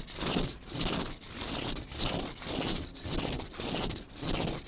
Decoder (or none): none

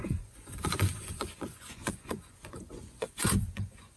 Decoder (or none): vocoder, Vocos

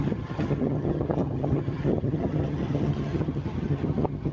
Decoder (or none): vocoder, HiFi-GAN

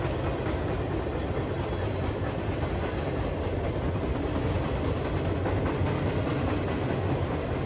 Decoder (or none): none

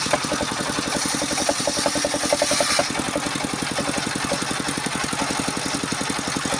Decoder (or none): none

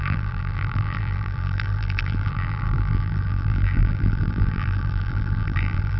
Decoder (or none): vocoder, BigVGAN v2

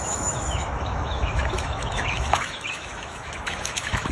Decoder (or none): autoencoder, DAC-VAE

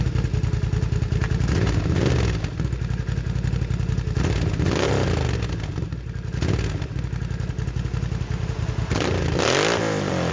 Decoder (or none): none